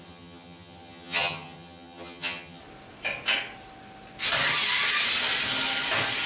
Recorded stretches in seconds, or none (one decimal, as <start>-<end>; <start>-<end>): 2.6-6.3